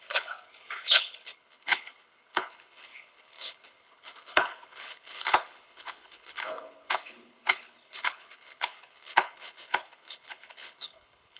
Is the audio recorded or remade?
remade